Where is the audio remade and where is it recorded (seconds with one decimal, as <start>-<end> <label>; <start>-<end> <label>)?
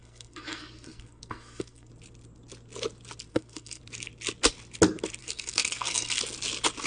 0.0-1.9 remade; 1.9-3.3 recorded; 3.3-3.8 remade; 3.8-5.2 recorded; 5.2-6.2 remade; 6.2-6.9 recorded